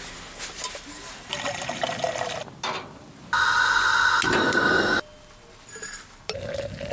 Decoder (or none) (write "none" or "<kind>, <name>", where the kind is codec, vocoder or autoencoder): none